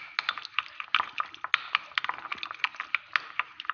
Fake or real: real